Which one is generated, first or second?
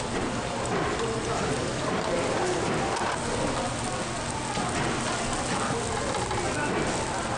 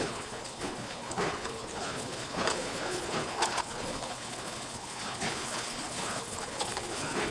second